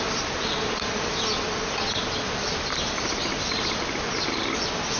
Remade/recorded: recorded